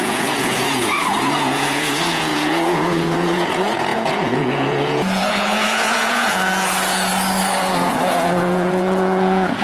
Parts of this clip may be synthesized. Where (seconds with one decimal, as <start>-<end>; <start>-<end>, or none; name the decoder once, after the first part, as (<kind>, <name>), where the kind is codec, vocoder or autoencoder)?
0.0-7.1 (vocoder, Vocos); 7.7-9.6